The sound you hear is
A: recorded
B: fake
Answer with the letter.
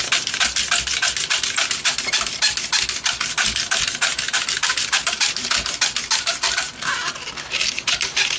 A